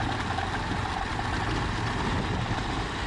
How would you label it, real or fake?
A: real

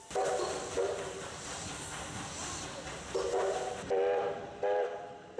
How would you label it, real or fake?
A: real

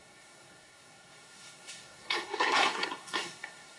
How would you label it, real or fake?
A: fake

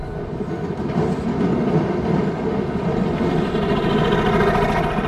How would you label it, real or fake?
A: real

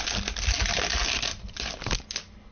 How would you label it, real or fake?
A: real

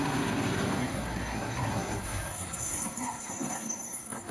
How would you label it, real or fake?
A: fake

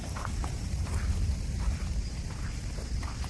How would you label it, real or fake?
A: real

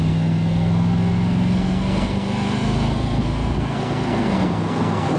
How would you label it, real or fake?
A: fake